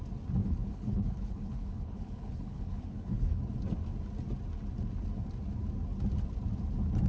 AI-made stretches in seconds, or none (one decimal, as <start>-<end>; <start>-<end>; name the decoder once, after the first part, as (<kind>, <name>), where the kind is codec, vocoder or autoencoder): 0.4-3.4 (codec, HILCodec)

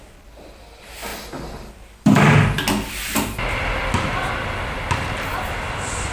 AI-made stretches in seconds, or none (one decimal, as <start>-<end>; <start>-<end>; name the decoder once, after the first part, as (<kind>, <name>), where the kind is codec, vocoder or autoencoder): none

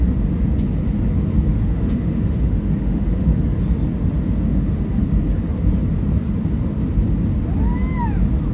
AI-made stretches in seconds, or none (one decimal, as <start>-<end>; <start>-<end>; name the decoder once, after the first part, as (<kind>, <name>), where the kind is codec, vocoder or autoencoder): 1.6-3.4 (autoencoder, DAC-VAE); 4.5-5.0

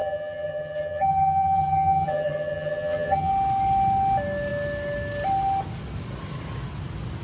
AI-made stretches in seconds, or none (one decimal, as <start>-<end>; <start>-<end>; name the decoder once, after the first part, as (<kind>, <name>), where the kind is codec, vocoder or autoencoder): 0.0-3.3 (vocoder, HiFi-GAN)